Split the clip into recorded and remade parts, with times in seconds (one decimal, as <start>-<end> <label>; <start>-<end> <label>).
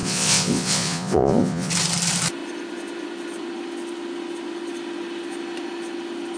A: 0.0-1.7 remade; 1.7-6.4 recorded